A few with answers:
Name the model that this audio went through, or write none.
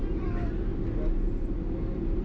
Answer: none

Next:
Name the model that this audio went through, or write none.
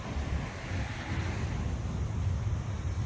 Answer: none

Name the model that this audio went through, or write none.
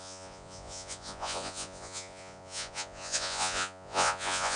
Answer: vocoder, Vocos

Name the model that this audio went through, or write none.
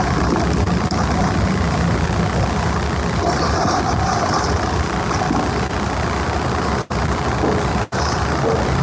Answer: none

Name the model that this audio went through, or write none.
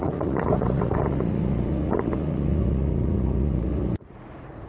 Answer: vocoder, Vocos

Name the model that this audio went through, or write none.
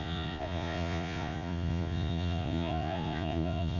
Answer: vocoder, Vocos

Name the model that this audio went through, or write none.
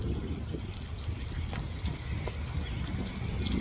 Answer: none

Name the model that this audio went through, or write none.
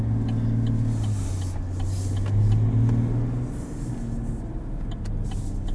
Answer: none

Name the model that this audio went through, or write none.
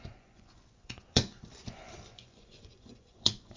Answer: vocoder, Vocos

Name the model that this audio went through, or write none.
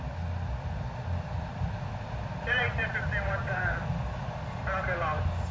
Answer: none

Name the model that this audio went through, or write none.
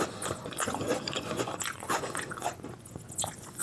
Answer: vocoder, Vocos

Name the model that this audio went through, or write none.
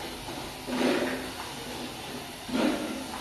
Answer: none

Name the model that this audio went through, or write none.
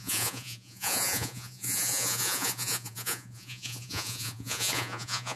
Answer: vocoder, Vocos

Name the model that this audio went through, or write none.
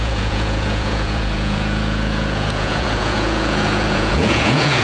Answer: vocoder, Vocos